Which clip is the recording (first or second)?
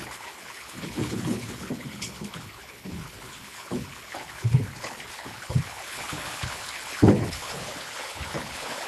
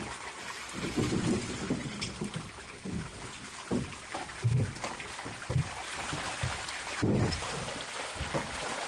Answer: second